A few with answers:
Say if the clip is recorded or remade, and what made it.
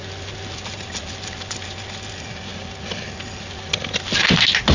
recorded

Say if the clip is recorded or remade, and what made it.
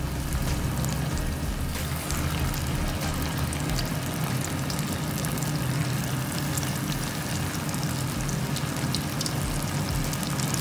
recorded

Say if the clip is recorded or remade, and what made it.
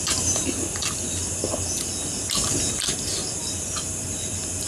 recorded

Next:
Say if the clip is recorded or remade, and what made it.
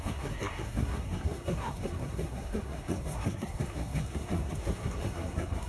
remade, codec, SNAC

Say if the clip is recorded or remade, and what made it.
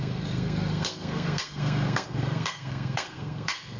remade, codec, SNAC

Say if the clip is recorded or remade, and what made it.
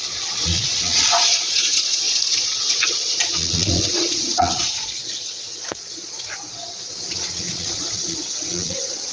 remade, vocoder, Vocos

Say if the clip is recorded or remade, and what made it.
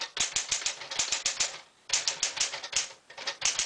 recorded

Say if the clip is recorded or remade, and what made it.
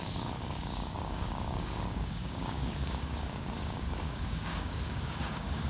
remade, codec, DAC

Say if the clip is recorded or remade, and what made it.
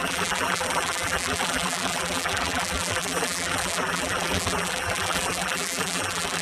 remade, vocoder, BigVGAN v2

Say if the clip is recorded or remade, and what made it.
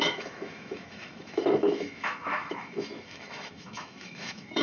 remade, autoencoder, DAC-VAE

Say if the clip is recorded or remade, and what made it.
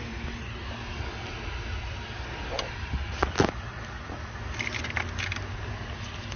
recorded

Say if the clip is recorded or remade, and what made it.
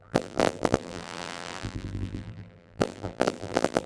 remade, vocoder, BigVGAN v2